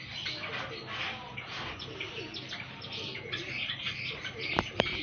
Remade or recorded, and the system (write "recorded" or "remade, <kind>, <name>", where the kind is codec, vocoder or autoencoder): recorded